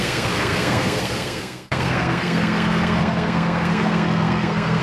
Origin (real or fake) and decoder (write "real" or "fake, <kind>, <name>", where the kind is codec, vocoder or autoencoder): fake, codec, SNAC